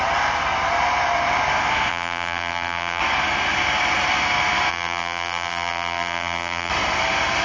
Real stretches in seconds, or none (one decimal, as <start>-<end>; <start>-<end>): 0.0-1.9; 3.0-4.7; 6.7-7.4